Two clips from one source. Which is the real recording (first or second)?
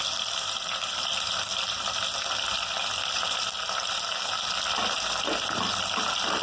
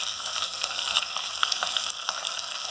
first